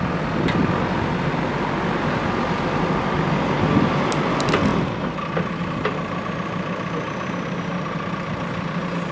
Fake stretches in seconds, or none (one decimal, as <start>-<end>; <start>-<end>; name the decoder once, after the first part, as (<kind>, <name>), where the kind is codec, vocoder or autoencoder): none